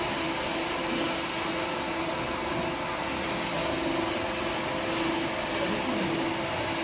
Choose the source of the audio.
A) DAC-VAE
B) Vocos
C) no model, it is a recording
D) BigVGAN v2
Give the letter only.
C